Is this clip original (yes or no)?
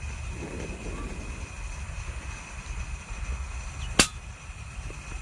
yes